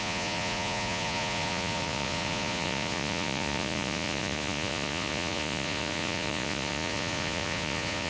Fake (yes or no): yes